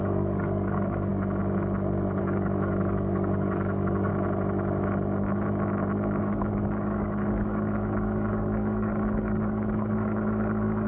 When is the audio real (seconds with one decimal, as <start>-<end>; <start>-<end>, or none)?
1.1-2.2; 4.1-6.2